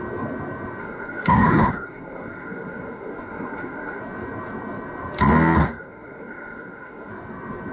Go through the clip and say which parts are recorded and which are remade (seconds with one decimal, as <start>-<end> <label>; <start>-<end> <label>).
0.0-0.8 recorded; 0.8-4.0 remade; 4.0-5.6 recorded; 5.6-7.1 remade; 7.1-7.7 recorded